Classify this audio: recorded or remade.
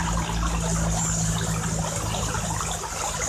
recorded